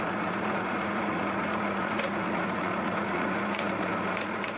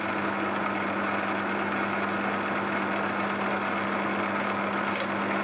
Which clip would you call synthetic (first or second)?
first